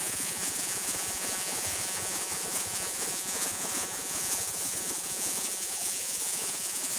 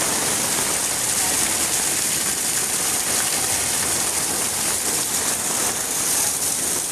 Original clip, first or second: second